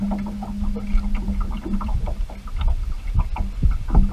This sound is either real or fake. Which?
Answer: real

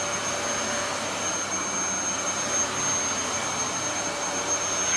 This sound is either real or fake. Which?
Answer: real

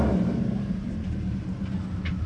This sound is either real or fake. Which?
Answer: fake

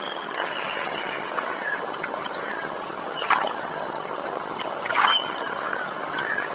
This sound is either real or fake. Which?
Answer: fake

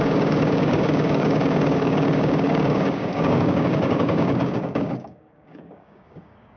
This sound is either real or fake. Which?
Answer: fake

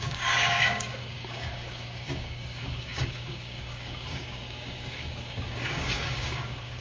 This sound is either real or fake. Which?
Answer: fake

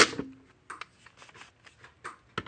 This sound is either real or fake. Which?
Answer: real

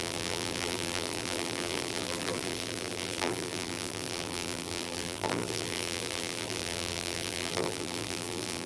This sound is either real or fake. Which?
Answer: fake